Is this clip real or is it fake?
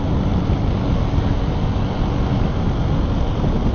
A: real